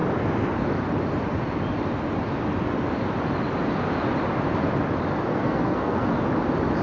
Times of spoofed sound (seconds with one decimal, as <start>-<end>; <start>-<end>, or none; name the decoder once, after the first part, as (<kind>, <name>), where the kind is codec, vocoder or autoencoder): 5.3-6.1 (codec, SNAC)

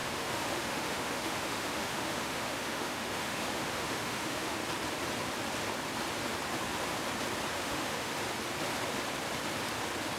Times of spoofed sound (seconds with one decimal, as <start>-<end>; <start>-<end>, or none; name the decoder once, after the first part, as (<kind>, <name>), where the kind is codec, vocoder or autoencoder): 0.0-4.6 (autoencoder, DAC-VAE); 7.5-8.1

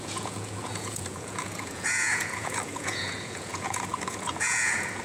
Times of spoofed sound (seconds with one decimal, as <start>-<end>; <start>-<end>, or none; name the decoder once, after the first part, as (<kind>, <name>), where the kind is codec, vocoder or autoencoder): 0.0-5.0 (vocoder, Vocos)